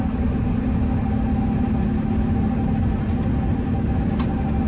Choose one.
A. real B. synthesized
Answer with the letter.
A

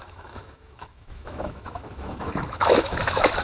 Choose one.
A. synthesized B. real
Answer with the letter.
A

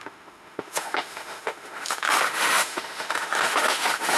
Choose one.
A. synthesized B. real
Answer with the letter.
A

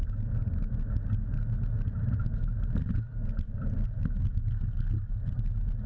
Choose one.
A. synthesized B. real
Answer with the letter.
B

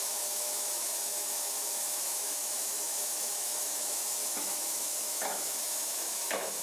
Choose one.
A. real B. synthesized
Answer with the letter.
B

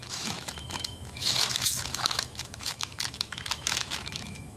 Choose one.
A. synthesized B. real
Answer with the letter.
A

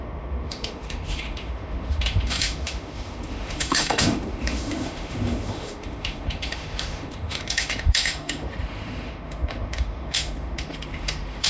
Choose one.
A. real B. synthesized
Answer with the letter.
B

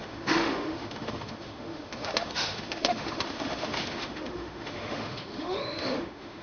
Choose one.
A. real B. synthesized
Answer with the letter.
B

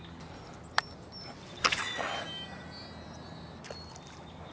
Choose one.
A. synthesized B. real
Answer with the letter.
B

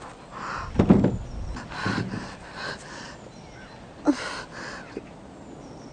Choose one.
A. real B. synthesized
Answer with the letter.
A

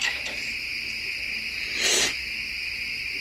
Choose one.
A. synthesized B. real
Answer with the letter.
B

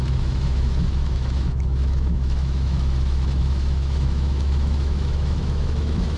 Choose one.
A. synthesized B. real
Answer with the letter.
A